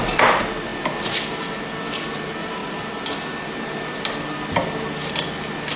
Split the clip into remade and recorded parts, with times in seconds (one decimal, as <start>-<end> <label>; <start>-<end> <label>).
0.0-5.8 recorded